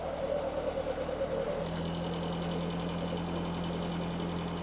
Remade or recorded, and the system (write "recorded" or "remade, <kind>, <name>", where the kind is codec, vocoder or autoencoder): recorded